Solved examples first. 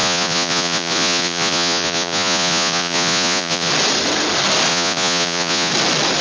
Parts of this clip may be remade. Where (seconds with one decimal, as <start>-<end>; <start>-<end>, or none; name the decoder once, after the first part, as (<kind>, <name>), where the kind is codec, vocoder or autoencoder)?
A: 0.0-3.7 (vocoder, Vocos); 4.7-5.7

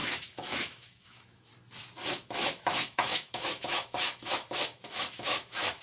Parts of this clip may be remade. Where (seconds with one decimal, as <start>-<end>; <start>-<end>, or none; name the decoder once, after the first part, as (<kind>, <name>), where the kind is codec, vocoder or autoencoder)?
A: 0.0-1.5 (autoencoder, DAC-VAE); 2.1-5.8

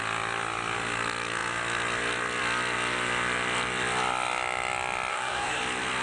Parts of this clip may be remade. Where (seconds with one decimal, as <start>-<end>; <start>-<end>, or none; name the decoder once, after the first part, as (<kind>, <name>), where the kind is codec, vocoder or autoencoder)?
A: 5.1-5.6 (codec, DAC)

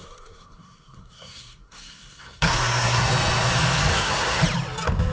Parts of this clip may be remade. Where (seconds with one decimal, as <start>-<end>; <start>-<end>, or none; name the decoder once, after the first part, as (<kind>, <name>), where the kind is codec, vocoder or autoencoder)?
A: 0.0-3.1 (codec, SNAC); 3.9-4.4

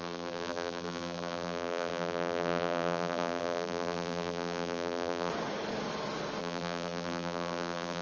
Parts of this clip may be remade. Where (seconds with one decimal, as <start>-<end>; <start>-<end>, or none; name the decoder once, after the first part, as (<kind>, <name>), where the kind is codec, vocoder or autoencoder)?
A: 0.0-5.3 (vocoder, BigVGAN v2); 6.4-8.0

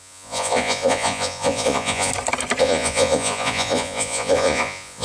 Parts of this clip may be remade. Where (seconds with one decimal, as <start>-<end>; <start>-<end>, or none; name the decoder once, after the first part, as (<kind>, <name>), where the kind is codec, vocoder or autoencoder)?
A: 0.0-2.1 (vocoder, Vocos); 2.6-5.0